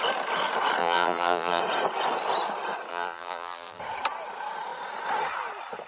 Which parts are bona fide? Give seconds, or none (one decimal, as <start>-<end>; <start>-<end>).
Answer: 0.0-0.8; 1.6-2.9; 3.8-5.9